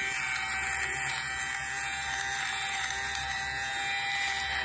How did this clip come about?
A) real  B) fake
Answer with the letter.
A